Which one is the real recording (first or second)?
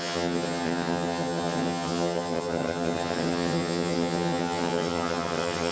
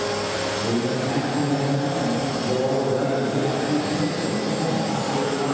second